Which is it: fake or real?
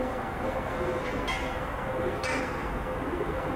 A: fake